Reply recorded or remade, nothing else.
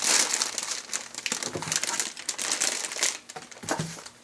recorded